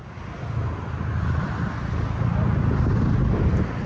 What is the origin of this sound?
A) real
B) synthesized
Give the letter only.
A